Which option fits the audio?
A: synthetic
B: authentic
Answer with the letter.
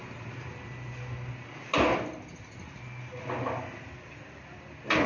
B